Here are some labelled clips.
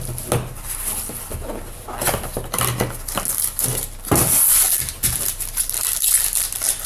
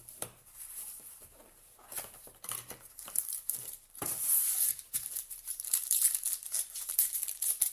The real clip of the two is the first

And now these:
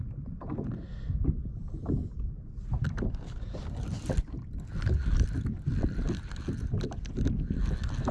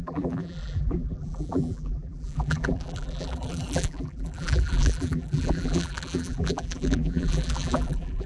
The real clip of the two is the first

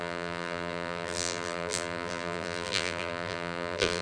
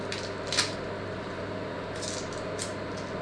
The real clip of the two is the second